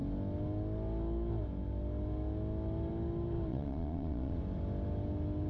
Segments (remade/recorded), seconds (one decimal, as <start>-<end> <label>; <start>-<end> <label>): 0.0-3.5 recorded; 3.5-4.4 remade; 4.4-5.5 recorded